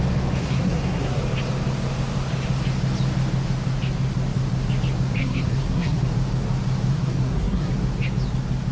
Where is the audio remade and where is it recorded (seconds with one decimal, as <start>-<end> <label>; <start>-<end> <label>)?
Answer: 0.0-0.4 recorded; 0.4-1.2 remade; 1.2-5.2 recorded; 5.2-6.1 remade; 6.1-6.9 recorded; 6.9-7.7 remade; 7.7-8.7 recorded